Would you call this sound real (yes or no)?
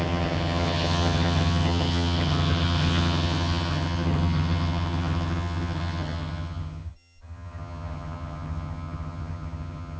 no